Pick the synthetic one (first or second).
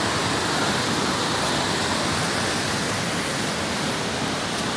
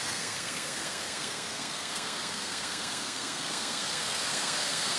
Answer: second